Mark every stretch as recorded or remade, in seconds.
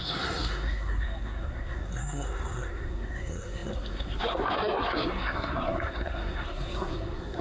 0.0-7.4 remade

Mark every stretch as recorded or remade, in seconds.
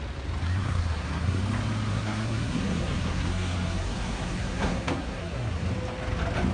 0.0-0.4 recorded; 0.4-1.4 remade; 1.4-1.9 recorded; 1.9-5.7 remade; 5.7-6.5 recorded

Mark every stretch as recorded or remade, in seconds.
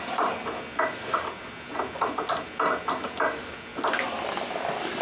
0.0-5.0 recorded